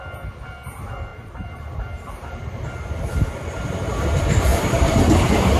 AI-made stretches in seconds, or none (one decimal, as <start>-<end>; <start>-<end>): 1.1-2.6; 4.5-5.0